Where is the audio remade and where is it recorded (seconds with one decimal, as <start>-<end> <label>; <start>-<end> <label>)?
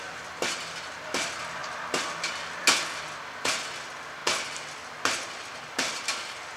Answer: 0.0-6.6 recorded